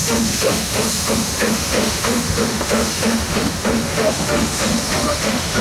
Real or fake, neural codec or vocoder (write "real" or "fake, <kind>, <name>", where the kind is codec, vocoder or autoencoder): fake, autoencoder, DAC-VAE